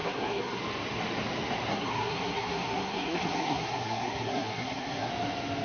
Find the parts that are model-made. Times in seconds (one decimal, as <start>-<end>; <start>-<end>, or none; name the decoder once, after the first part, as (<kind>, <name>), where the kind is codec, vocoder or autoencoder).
0.0-0.6 (codec, SNAC); 1.7-5.1